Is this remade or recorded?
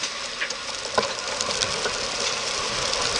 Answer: remade